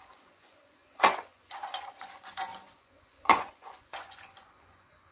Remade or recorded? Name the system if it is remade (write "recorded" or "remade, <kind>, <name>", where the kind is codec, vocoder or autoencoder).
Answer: remade, vocoder, Vocos